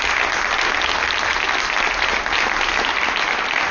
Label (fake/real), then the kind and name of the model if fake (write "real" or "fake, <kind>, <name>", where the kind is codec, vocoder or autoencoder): real